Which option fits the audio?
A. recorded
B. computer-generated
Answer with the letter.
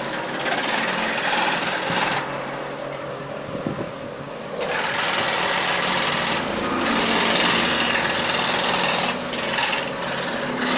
A